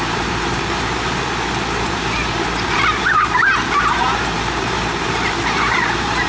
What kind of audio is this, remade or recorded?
remade